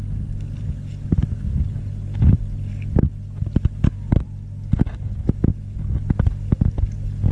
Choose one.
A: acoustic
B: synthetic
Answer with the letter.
A